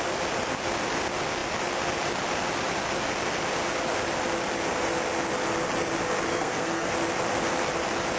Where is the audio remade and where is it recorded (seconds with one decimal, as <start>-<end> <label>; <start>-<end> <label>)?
0.0-6.3 recorded; 6.3-6.9 remade; 6.9-8.2 recorded